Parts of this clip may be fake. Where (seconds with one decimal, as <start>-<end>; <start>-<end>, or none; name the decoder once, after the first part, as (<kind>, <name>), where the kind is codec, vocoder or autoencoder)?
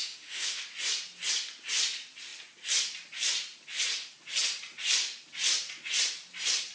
0.0-0.6 (autoencoder, DAC-VAE)